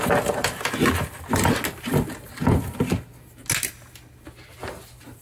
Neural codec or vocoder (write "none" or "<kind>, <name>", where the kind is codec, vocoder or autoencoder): none